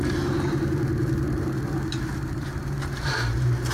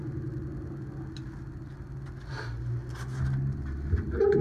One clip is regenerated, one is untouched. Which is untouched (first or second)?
second